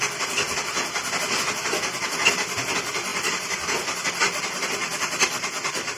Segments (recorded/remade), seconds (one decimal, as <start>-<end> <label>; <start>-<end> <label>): 0.0-3.1 recorded; 3.1-6.0 remade